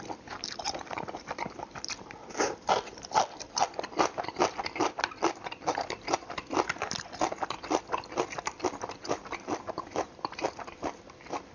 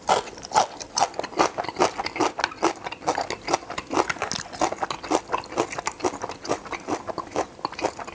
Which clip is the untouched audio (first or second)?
second